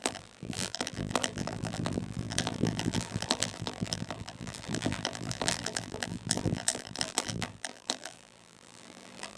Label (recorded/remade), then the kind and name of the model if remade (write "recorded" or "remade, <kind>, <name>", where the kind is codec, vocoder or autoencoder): remade, vocoder, BigVGAN v2